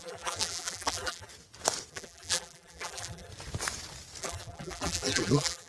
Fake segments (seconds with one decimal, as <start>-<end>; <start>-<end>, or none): 0.0-1.3; 1.9-3.3; 4.2-5.7